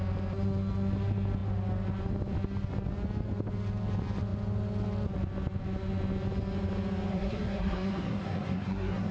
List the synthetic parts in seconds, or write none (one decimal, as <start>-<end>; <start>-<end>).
7.1-9.1